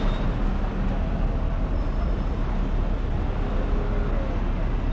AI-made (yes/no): no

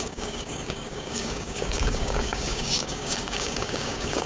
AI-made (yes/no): yes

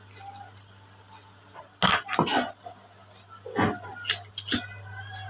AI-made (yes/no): no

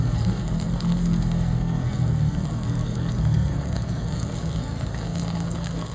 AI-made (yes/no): yes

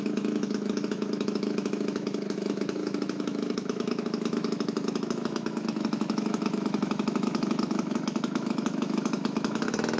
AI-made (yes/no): yes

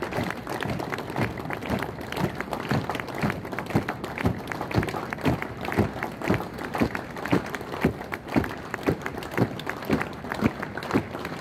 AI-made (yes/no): no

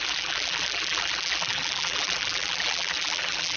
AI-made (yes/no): yes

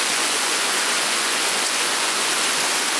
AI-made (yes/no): yes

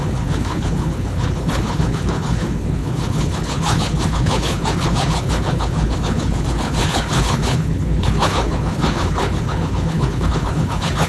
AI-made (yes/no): yes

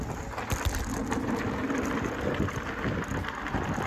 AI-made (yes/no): no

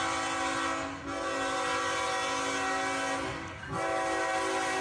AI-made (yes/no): no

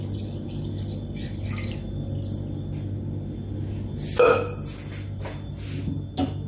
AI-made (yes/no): no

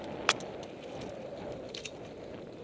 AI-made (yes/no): no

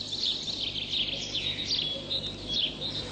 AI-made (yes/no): no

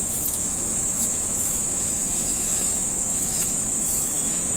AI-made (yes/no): yes